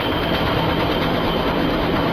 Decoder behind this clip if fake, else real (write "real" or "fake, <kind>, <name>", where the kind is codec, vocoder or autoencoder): real